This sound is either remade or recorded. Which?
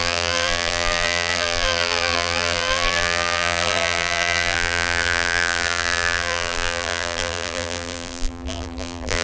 remade